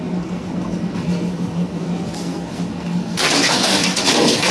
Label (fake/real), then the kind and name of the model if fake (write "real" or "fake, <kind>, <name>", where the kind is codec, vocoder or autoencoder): fake, codec, SNAC